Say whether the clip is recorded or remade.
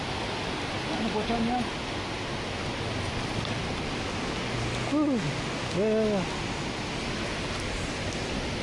recorded